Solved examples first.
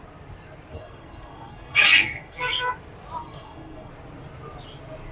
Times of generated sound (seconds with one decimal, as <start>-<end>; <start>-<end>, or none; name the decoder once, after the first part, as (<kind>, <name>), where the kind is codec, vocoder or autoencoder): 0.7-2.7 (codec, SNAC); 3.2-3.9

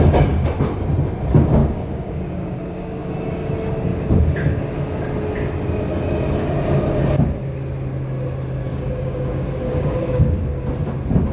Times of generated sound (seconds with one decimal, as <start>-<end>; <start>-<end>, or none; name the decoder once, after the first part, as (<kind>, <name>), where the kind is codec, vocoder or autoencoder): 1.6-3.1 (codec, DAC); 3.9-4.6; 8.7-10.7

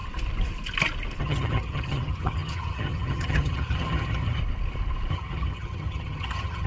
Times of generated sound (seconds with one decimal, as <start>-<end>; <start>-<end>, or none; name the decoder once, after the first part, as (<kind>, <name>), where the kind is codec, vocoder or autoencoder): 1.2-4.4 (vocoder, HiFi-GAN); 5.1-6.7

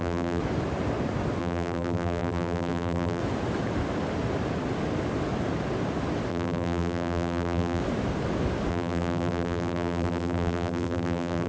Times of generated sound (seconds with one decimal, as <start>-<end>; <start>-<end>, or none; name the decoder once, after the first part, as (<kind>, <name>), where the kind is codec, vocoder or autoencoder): 0.0-0.4 (vocoder, BigVGAN v2); 1.4-3.2; 6.3-7.8; 8.7-11.5

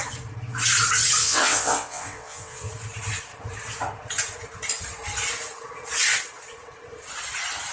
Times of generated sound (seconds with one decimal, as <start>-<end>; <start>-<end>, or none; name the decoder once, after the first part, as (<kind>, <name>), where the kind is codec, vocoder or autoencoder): 1.2-2.7 (vocoder, WaveNeXt)